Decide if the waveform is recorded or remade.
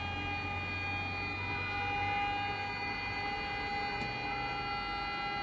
recorded